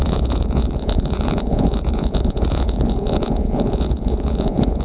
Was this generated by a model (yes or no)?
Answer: yes